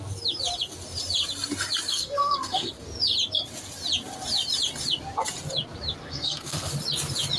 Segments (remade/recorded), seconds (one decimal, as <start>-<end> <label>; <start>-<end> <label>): 0.0-1.9 recorded; 1.9-2.7 remade; 2.7-6.0 recorded; 6.0-6.7 remade; 6.7-7.4 recorded